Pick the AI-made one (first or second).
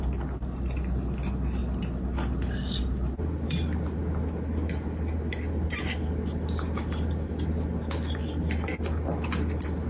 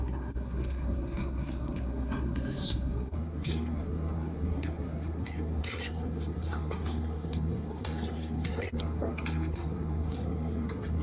second